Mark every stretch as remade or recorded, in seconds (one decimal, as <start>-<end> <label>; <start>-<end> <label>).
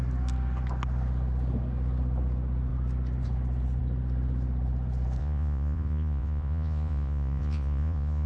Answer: 0.0-5.2 recorded; 5.2-8.3 remade